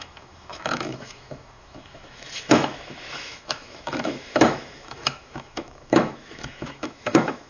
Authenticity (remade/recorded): remade